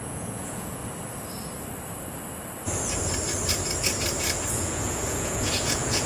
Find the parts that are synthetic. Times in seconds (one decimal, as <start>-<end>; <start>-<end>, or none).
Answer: 0.0-0.8; 4.5-6.1

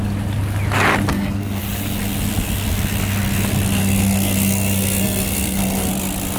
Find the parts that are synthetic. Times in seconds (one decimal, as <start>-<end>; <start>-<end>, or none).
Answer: 1.1-1.6; 3.8-5.9

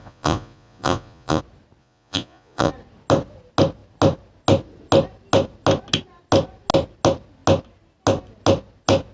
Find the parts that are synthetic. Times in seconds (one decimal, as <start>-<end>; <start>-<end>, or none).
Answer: 0.0-1.4; 1.8-2.7

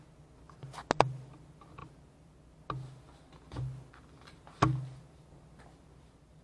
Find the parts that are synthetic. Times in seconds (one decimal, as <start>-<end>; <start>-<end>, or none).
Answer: none